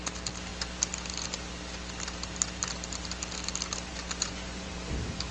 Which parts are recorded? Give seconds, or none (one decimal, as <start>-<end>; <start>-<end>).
0.0-3.9; 4.7-5.3